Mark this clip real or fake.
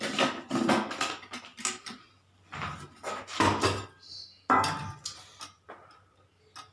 real